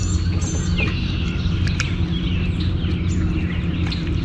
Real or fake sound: real